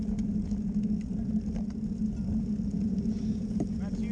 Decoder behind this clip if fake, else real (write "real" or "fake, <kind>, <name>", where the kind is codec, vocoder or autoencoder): real